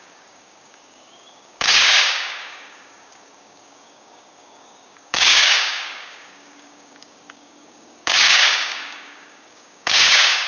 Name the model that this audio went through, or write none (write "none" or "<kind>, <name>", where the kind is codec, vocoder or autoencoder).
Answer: codec, DAC